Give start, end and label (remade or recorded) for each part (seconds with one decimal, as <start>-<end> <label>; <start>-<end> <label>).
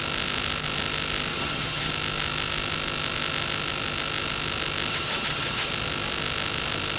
0.0-1.3 recorded; 1.3-1.9 remade; 1.9-4.9 recorded; 4.9-5.7 remade; 5.7-7.0 recorded